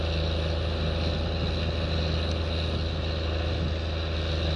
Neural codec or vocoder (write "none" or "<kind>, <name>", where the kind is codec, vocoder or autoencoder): none